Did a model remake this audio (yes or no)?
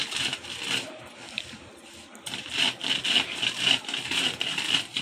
no